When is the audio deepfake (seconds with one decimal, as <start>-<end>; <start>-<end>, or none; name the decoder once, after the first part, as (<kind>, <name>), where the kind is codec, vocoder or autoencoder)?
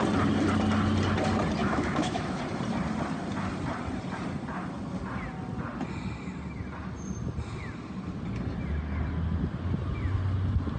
1.6-2.4 (autoencoder, DAC-VAE)